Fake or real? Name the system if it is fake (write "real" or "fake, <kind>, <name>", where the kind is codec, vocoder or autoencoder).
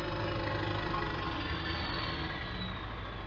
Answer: real